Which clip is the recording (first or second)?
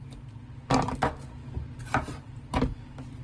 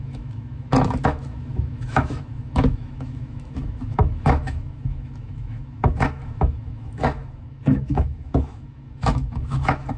first